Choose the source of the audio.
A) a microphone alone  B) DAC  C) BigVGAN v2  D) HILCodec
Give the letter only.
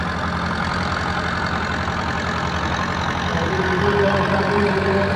A